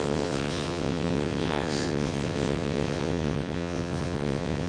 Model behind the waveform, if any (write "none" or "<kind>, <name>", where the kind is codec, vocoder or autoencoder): vocoder, WaveNeXt